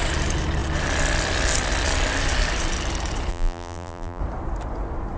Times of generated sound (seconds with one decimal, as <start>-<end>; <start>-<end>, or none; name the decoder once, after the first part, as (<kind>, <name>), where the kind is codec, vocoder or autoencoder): 3.3-4.2 (vocoder, BigVGAN v2)